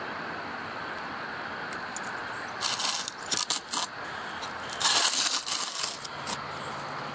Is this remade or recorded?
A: recorded